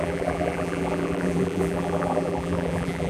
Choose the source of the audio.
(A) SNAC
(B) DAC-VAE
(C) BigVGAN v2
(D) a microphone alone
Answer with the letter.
C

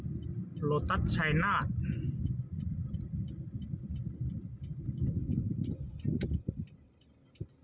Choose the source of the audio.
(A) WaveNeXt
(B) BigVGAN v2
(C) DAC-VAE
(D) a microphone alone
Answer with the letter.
D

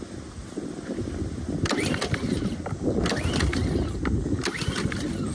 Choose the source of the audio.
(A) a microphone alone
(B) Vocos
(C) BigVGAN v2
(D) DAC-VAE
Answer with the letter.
A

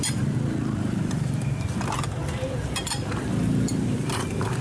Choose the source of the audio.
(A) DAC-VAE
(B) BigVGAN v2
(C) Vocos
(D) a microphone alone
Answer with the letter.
B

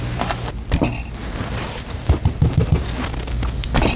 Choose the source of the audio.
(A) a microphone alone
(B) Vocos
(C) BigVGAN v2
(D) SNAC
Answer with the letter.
A